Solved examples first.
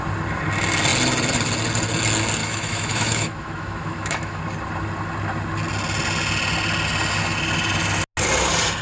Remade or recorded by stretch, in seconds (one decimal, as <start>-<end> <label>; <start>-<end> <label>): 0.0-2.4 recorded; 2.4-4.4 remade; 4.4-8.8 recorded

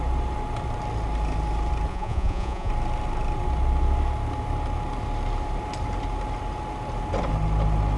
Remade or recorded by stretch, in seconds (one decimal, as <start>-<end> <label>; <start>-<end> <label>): 0.0-1.9 recorded; 1.9-2.7 remade; 2.7-8.0 recorded

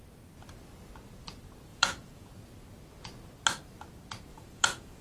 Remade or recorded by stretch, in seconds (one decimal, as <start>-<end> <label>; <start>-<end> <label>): 0.0-1.7 recorded; 1.7-2.3 remade; 2.3-4.3 recorded; 4.3-5.0 remade

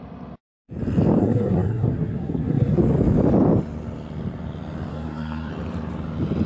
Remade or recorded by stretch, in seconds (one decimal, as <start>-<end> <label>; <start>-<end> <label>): 0.0-1.2 recorded; 1.2-2.8 remade; 2.8-4.9 recorded; 4.9-5.5 remade; 5.5-6.5 recorded

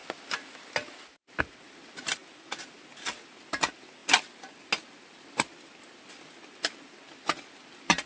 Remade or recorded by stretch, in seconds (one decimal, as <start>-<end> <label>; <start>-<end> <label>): 0.0-8.1 recorded

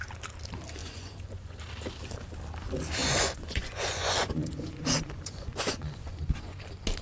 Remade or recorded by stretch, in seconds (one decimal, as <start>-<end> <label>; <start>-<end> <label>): 0.0-0.8 recorded; 0.8-1.6 remade; 1.6-3.0 recorded; 3.0-6.6 remade; 6.6-7.0 recorded

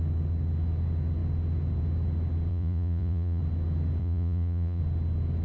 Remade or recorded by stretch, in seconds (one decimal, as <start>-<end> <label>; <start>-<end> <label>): 0.0-2.5 recorded; 2.5-3.4 remade; 3.4-4.0 recorded; 4.0-4.8 remade; 4.8-5.4 recorded

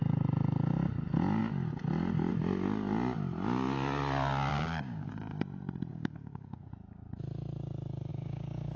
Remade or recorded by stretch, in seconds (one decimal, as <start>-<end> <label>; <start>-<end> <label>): 0.0-4.5 recorded; 4.5-5.1 remade; 5.1-5.9 recorded; 5.9-6.7 remade; 6.7-8.1 recorded; 8.1-8.8 remade